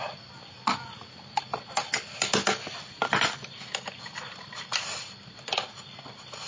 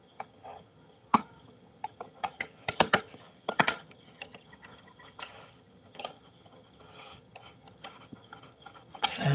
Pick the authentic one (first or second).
first